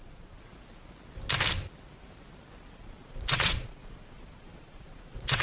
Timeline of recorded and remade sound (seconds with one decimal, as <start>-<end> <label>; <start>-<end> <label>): 0.0-0.5 remade; 0.5-2.8 recorded; 2.8-5.4 remade